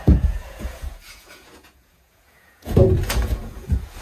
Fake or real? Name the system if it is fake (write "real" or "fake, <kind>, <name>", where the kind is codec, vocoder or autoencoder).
fake, vocoder, Vocos